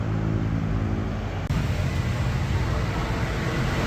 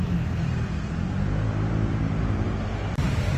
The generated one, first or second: second